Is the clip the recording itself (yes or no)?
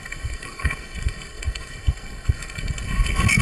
no